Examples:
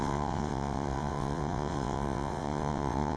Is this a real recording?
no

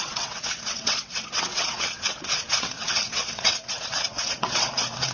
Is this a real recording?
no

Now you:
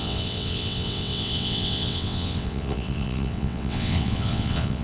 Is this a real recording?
no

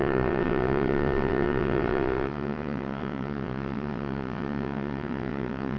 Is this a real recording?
no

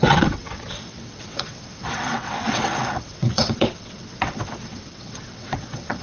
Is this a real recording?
no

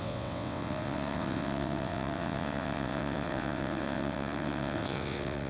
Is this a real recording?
no